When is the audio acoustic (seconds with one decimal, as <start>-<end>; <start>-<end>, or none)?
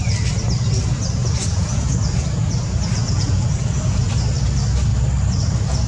0.0-1.2; 4.1-5.9